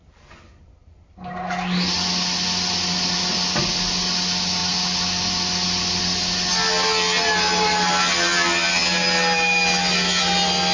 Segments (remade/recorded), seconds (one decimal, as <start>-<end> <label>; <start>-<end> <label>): 0.0-10.7 recorded